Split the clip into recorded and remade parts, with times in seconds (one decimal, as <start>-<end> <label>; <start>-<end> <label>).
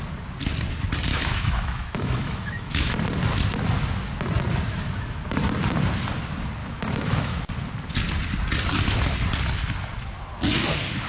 0.0-1.1 recorded; 1.1-2.9 remade; 2.9-6.6 recorded; 6.6-7.5 remade; 7.5-11.1 recorded